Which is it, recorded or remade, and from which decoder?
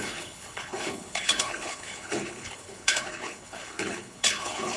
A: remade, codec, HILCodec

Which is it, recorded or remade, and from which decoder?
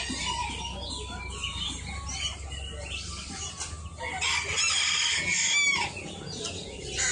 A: recorded